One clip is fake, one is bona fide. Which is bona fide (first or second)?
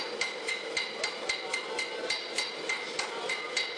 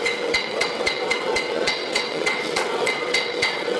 first